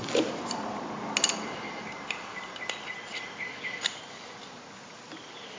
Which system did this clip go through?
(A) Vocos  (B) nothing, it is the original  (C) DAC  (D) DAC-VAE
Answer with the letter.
B